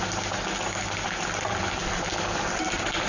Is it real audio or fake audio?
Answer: real